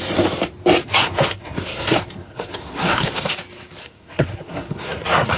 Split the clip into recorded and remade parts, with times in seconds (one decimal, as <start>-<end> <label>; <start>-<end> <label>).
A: 0.0-0.8 recorded; 0.8-3.3 remade; 3.3-3.8 recorded; 3.8-5.4 remade